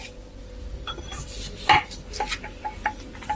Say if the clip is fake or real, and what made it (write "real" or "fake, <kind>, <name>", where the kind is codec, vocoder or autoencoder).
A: real